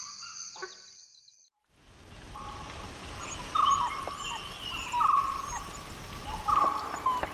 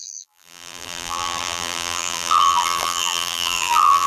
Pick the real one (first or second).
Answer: first